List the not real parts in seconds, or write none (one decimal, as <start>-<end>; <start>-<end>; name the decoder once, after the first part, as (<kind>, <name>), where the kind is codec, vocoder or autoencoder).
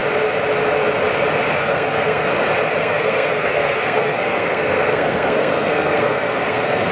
1.6-2.3 (codec, SNAC); 2.8-6.9